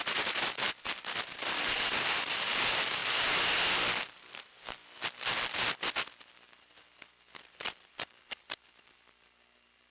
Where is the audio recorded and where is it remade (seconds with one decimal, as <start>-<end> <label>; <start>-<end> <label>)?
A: 0.0-3.0 remade; 3.0-4.0 recorded; 4.0-4.8 remade; 4.8-7.5 recorded; 7.5-9.9 remade